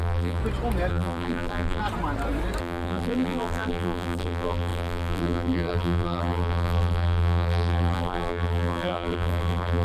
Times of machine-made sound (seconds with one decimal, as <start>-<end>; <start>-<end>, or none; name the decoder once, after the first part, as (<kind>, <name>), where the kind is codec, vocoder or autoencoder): 0.0-0.4 (vocoder, BigVGAN v2); 0.9-1.8; 2.6-9.8

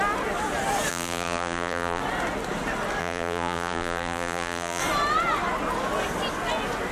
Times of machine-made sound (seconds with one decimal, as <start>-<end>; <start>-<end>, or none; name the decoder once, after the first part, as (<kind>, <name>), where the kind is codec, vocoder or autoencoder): 0.9-2.0 (vocoder, BigVGAN v2); 3.0-4.8

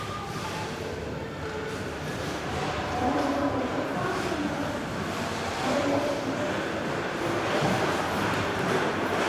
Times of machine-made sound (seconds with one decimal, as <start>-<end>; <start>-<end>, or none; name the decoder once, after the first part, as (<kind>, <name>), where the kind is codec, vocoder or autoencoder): 0.0-6.1 (vocoder, BigVGAN v2); 8.0-9.3

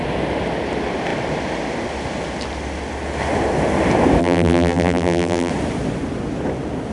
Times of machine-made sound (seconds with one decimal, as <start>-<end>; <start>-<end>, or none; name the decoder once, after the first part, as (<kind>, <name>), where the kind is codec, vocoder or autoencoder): 4.2-5.5 (vocoder, BigVGAN v2)

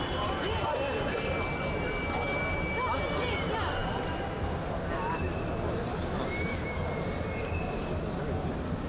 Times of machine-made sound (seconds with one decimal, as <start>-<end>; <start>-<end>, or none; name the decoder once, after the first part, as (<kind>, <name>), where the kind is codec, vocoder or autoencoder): none